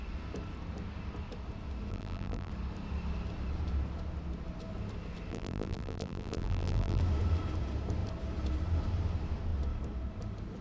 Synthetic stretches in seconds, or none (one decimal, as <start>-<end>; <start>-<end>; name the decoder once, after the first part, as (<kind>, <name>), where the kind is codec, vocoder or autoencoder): 1.9-2.5 (vocoder, BigVGAN v2); 5.3-7.0